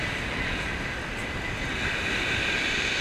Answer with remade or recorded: recorded